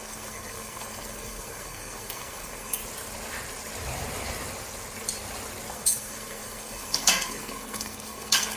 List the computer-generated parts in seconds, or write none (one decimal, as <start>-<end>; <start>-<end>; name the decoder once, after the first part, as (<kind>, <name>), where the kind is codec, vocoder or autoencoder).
0.0-2.8 (codec, SNAC); 5.7-8.6

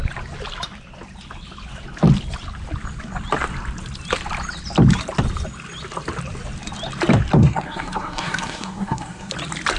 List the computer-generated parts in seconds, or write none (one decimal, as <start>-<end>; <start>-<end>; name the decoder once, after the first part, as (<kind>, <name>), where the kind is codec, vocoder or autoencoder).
7.4-9.3 (codec, SNAC)